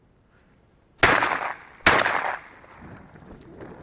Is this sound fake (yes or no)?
no